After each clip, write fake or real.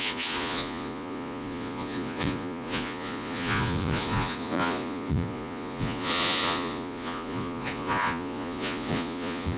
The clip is fake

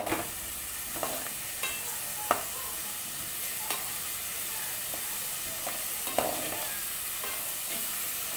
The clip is real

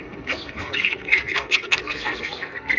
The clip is fake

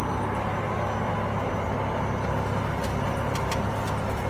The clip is real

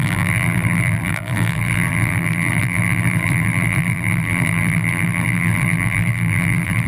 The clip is fake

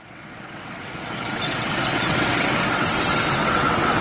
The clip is fake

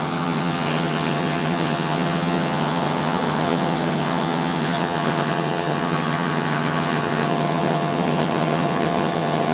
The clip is fake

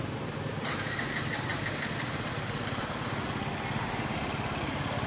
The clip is real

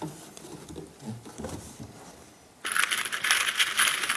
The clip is real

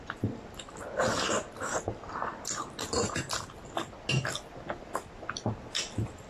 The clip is real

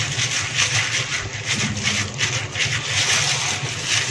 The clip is real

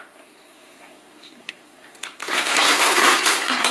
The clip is fake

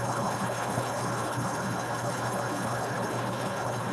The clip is fake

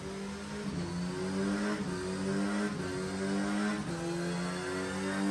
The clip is real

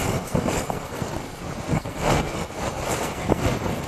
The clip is fake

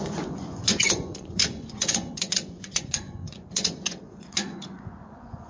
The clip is fake